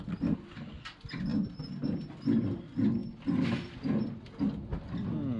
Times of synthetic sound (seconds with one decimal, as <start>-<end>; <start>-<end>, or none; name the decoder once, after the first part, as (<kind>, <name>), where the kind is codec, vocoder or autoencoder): none